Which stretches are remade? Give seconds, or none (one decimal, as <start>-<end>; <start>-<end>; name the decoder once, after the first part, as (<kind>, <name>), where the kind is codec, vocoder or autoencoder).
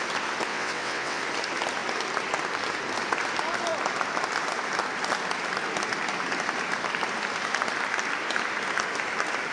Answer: 0.5-1.2 (vocoder, WaveNeXt)